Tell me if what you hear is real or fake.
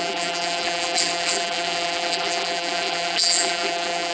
fake